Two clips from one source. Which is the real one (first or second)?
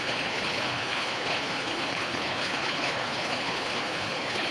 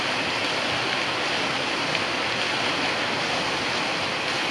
second